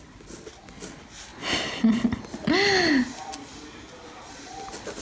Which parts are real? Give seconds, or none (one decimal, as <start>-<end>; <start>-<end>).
0.0-5.0